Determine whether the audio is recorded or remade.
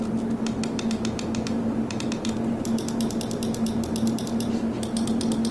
recorded